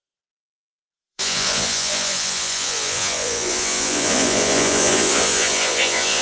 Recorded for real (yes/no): no